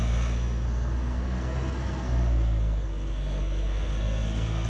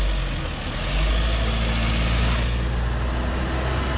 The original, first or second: second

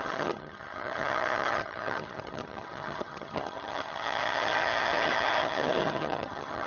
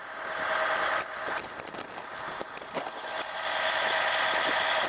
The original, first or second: second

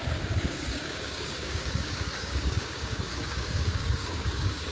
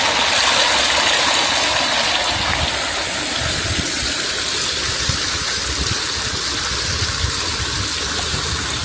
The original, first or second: second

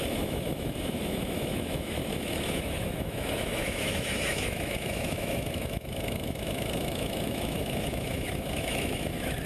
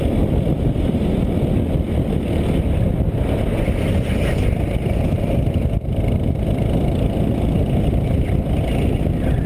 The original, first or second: second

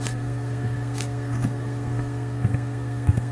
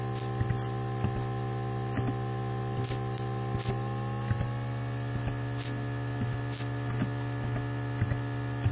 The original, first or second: second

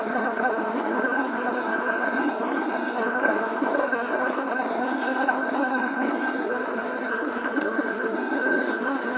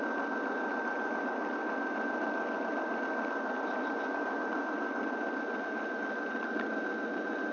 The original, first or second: second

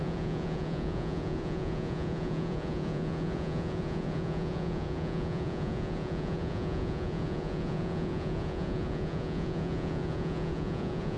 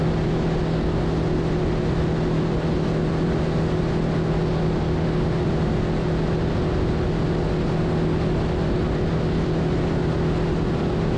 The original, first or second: second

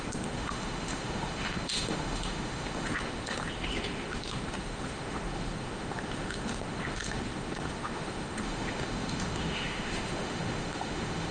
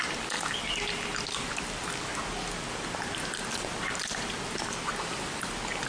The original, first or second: second